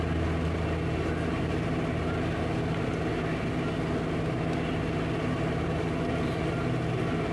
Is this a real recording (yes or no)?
yes